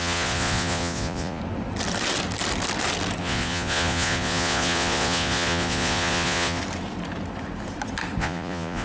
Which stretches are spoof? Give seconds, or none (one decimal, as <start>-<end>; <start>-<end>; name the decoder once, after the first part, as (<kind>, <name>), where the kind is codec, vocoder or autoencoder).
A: 0.0-1.4 (vocoder, Vocos); 3.2-6.6; 8.2-8.8